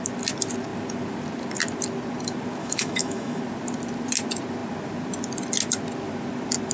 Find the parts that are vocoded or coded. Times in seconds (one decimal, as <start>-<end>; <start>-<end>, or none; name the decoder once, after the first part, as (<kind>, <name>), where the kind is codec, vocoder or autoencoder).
2.6-3.4 (autoencoder, DAC-VAE)